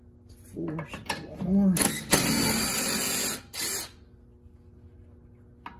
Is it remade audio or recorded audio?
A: recorded